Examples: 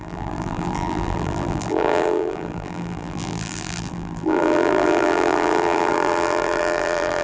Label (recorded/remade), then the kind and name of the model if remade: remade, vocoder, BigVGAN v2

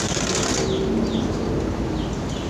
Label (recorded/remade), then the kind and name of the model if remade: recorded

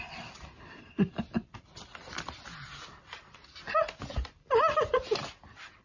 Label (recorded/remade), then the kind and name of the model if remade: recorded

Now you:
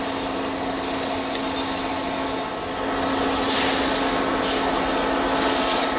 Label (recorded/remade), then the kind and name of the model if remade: recorded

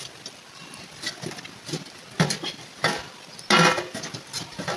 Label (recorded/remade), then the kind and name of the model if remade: recorded